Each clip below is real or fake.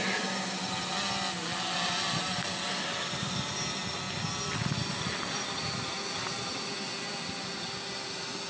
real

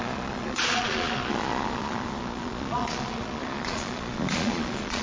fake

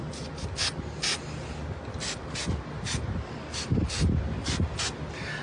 real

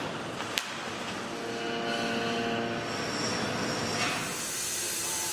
real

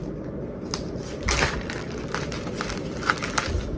real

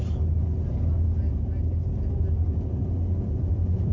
real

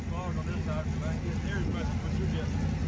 real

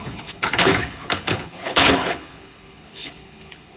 fake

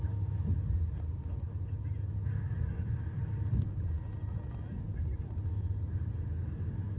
real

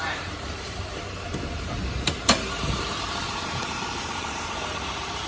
fake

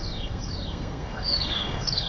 fake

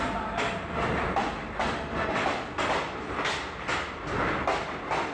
real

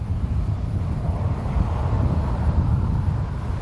real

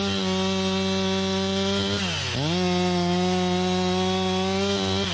real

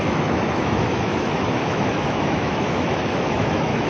fake